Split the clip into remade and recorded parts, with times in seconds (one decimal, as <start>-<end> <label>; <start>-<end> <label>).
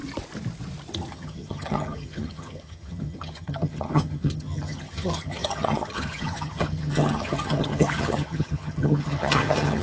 0.0-1.1 recorded; 1.1-9.8 remade